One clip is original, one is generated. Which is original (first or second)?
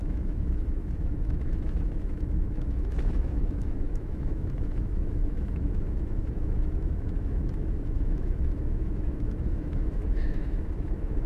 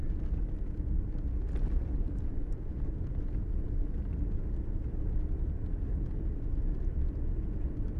second